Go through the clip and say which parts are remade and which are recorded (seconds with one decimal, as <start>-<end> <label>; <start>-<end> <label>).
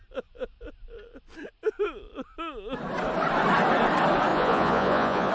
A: 0.0-4.3 recorded; 4.3-5.3 remade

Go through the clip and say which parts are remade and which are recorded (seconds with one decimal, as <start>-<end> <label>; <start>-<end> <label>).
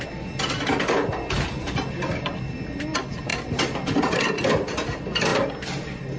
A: 0.0-6.2 recorded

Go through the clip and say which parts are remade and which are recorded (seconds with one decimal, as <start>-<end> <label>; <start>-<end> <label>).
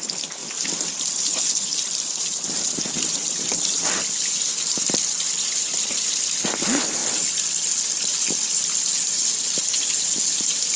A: 0.0-10.8 recorded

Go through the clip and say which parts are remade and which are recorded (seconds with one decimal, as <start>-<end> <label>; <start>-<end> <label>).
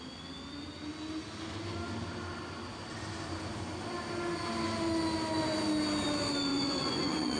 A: 0.0-6.5 recorded; 6.5-7.4 remade